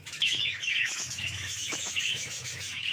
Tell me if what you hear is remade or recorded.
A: remade